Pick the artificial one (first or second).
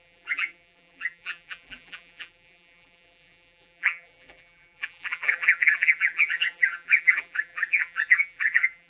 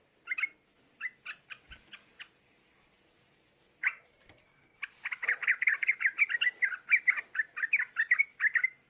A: first